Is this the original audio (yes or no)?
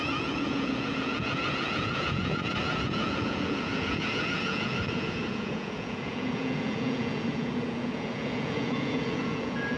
no